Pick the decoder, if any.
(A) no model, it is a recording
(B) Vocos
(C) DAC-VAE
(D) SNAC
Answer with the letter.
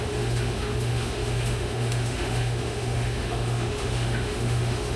C